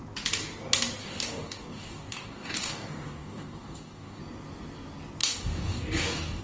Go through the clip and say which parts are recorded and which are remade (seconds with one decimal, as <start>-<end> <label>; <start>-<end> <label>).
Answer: 0.0-1.0 recorded; 1.0-4.2 remade; 4.2-5.2 recorded; 5.2-6.4 remade